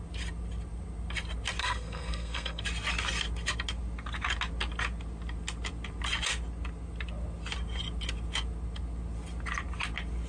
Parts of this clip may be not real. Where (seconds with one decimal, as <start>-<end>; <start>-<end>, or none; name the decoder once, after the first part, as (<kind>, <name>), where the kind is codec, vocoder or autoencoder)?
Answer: 1.6-2.6 (codec, SNAC)